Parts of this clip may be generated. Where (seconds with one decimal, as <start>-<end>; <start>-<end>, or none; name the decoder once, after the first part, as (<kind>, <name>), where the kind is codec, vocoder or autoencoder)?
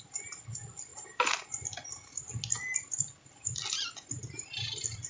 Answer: none